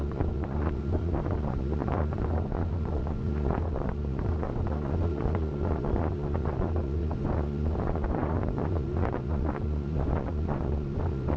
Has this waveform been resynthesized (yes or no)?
yes